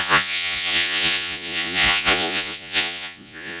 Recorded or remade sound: remade